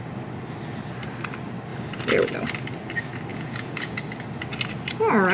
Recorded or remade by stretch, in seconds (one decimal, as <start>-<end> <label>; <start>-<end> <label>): 0.0-3.3 recorded; 3.3-4.0 remade; 4.0-5.3 recorded